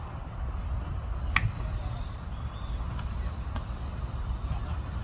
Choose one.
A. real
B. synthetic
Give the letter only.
A